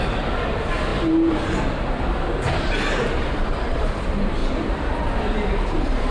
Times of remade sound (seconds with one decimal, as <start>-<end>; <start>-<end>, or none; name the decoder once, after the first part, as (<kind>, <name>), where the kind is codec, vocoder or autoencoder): 0.0-4.4 (vocoder, BigVGAN v2); 5.2-6.1

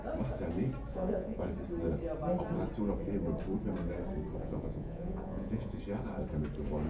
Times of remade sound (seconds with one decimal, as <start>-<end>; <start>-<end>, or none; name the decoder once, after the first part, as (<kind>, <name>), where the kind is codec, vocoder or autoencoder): 0.9-1.5 (vocoder, Vocos); 4.4-5.8

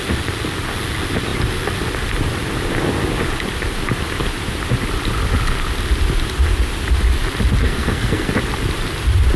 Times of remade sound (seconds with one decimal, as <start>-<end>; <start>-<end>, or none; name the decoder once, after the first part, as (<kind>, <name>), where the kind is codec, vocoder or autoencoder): 7.6-8.3 (codec, SNAC)